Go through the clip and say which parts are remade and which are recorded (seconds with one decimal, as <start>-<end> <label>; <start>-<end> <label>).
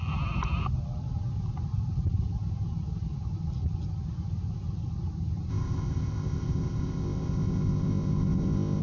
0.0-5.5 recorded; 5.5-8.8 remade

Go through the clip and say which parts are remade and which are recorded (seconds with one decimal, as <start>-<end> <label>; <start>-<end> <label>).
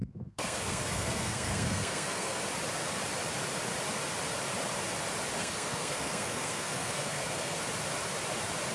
0.0-2.4 remade; 2.4-5.4 recorded; 5.4-7.6 remade; 7.6-8.7 recorded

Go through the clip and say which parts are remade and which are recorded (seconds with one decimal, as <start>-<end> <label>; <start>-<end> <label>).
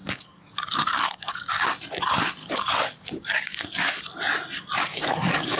0.0-1.5 remade; 1.5-2.4 recorded; 2.4-4.0 remade; 4.0-4.9 recorded; 4.9-5.6 remade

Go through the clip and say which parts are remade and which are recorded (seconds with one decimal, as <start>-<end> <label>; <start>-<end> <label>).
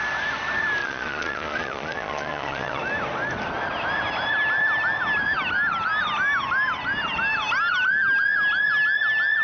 0.0-0.8 recorded; 0.8-2.8 remade; 2.8-9.4 recorded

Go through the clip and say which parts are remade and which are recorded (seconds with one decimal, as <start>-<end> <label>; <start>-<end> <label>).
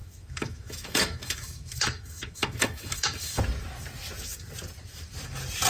0.0-3.4 remade; 3.4-5.7 recorded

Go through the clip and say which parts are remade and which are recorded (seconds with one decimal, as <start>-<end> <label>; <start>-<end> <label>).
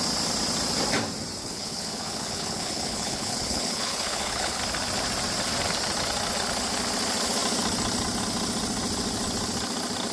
0.0-1.4 recorded; 1.4-4.6 remade; 4.6-10.1 recorded